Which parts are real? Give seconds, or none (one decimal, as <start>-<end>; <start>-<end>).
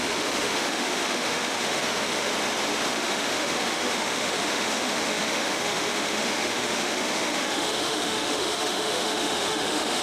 2.3-2.9